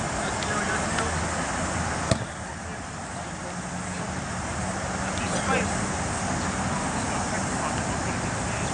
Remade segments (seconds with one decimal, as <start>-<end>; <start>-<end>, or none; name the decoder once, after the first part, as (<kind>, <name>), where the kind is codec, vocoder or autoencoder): none